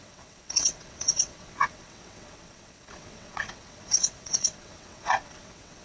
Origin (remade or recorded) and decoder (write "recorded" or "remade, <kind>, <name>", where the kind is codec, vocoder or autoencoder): remade, vocoder, WaveNeXt